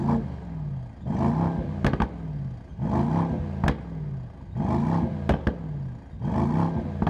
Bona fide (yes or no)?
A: yes